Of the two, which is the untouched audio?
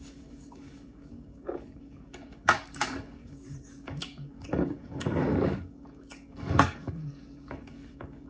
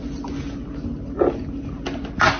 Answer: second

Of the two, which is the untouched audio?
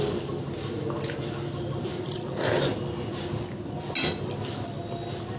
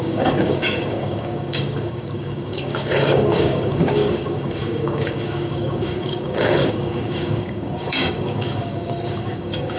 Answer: first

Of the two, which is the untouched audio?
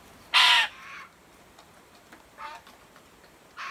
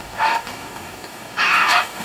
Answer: first